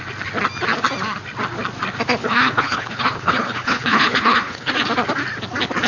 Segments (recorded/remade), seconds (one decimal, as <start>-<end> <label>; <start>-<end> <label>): 0.0-2.2 recorded; 2.2-4.7 remade; 4.7-5.9 recorded